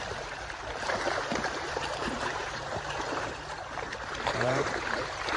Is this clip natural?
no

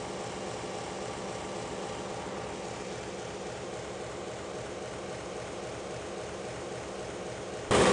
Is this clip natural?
yes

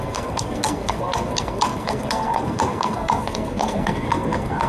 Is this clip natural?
no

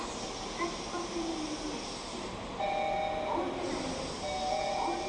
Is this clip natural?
yes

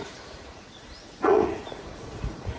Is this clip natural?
no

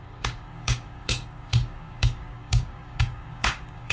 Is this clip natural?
no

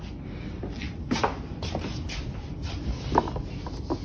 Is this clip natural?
yes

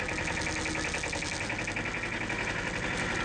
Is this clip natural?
yes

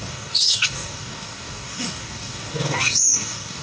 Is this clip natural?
no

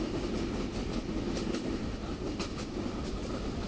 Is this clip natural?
yes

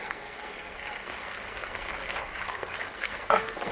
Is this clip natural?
no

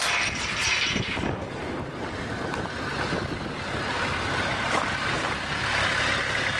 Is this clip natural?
yes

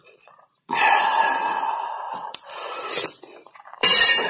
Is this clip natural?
no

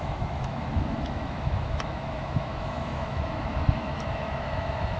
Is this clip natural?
no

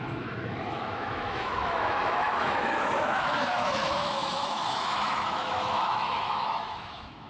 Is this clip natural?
no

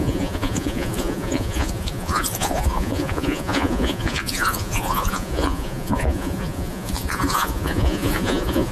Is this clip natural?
no